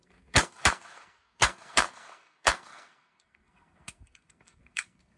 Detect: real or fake fake